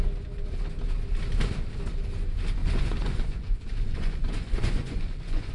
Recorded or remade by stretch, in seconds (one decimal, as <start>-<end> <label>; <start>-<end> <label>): 0.0-2.6 recorded; 2.6-5.5 remade